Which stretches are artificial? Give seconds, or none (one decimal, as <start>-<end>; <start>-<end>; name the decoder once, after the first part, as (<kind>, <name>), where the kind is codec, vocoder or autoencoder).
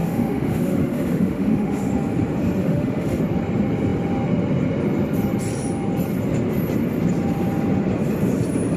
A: 0.0-1.9 (autoencoder, DAC-VAE); 2.6-3.2